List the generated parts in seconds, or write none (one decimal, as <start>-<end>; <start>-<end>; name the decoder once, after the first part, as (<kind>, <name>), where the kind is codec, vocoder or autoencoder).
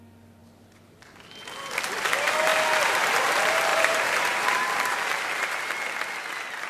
3.7-5.7 (vocoder, BigVGAN v2)